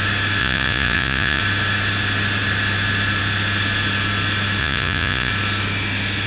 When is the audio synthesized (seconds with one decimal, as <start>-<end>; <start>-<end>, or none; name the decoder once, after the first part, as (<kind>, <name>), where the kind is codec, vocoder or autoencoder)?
0.4-1.4 (vocoder, Vocos); 4.6-5.3